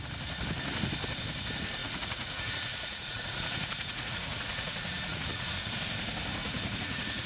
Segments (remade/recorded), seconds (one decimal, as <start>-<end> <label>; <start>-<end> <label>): 0.0-1.8 recorded; 1.8-5.7 remade; 5.7-6.4 recorded; 6.4-7.3 remade